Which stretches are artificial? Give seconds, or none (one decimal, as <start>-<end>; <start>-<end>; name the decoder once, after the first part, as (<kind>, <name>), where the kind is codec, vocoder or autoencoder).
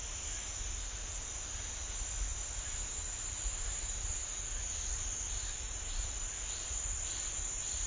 none